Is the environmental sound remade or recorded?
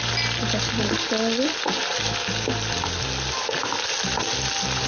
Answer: recorded